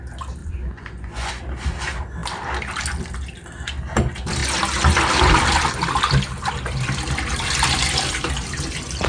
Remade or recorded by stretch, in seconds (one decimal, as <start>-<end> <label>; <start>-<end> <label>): 0.0-0.4 recorded; 0.4-1.3 remade; 1.3-9.1 recorded